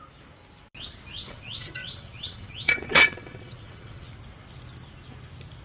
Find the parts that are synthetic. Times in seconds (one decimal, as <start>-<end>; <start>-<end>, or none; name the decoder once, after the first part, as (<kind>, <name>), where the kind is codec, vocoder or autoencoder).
1.2-4.1 (vocoder, WaveNeXt)

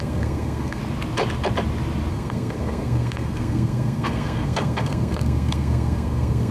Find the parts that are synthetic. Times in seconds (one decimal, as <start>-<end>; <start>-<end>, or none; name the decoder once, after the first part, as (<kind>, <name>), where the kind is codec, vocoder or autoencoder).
0.0-0.8 (codec, SNAC); 2.1-6.5

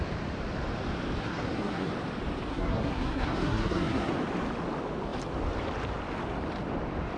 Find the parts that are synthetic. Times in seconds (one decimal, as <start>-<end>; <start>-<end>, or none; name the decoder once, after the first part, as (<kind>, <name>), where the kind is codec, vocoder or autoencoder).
1.2-1.9 (codec, SNAC); 2.5-4.1

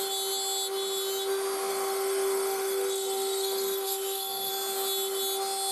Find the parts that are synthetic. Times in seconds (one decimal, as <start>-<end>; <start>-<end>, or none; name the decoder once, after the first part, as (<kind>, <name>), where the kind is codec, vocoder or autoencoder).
1.7-4.5 (codec, SNAC)